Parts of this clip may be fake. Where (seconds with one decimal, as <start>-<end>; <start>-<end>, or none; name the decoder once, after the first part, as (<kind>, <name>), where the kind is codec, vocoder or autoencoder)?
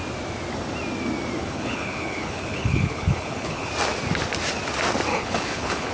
1.4-3.7 (codec, HILCodec); 5.1-5.9